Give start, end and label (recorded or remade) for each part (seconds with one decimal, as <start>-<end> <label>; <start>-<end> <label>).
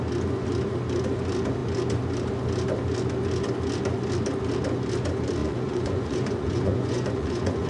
0.0-5.4 recorded; 5.4-7.7 remade